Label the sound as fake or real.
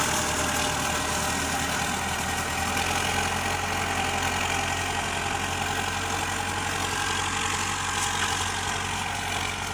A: real